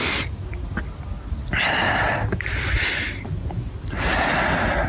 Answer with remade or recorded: recorded